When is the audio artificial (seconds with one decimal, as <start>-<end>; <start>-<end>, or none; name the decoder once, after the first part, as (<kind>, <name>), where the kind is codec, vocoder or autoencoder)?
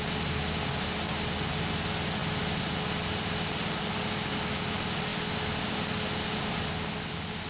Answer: none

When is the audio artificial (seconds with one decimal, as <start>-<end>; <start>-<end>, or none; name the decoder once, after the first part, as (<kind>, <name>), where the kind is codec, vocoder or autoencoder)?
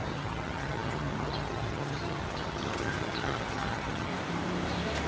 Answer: 0.0-4.1 (vocoder, HiFi-GAN)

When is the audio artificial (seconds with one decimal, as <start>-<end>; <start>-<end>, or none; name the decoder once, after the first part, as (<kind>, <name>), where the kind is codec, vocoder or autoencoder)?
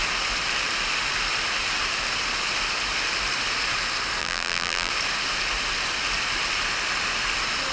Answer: 4.2-4.9 (vocoder, BigVGAN v2)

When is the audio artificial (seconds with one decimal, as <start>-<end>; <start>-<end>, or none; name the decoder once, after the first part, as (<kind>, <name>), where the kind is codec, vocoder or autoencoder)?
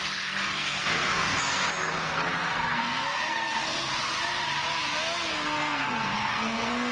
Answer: 0.0-3.9 (codec, SNAC); 5.3-6.9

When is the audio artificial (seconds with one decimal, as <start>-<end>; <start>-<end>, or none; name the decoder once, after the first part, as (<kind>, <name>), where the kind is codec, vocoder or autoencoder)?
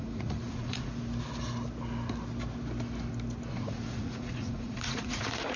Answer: 0.0-0.9 (vocoder, Vocos); 3.5-5.6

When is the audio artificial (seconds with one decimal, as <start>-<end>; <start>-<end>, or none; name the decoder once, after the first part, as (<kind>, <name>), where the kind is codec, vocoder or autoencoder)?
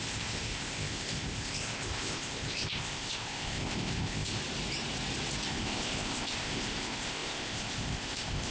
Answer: 0.0-4.4 (codec, ZipCodec); 5.5-8.5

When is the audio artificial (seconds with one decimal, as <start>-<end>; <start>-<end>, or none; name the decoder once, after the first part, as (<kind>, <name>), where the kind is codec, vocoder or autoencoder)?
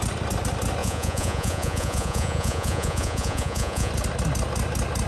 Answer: 0.8-3.9 (vocoder, Vocos)